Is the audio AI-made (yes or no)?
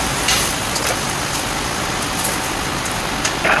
no